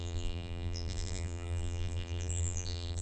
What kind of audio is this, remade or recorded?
remade